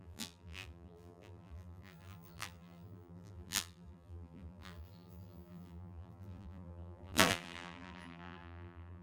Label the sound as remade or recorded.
remade